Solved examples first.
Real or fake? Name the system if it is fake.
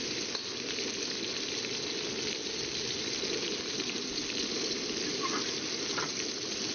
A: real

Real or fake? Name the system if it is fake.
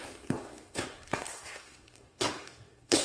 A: fake, codec, SNAC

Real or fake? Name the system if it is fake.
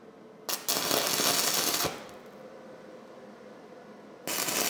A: real